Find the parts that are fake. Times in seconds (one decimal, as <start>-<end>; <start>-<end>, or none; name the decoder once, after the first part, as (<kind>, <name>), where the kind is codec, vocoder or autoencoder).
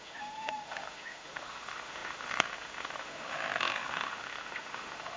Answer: 0.0-5.2 (autoencoder, DAC-VAE)